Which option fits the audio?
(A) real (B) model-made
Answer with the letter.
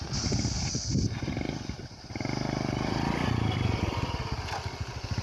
A